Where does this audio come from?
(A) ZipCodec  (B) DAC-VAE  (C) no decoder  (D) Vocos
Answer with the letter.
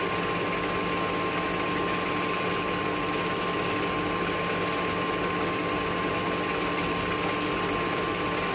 C